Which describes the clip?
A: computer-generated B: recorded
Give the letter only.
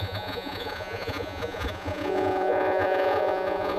A